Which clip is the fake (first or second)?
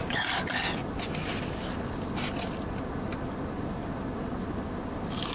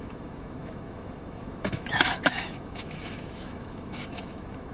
second